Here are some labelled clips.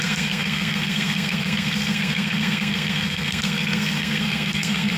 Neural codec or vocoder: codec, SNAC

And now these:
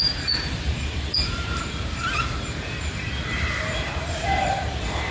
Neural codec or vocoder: vocoder, BigVGAN v2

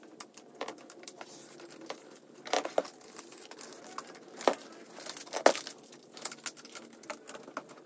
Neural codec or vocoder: none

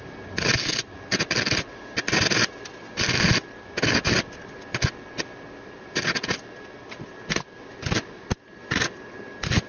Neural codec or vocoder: none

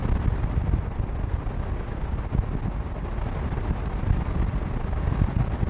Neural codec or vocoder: none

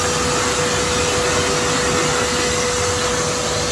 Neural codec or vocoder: none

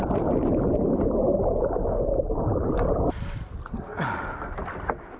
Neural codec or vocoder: none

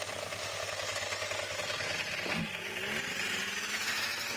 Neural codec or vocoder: none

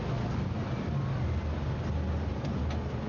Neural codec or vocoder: none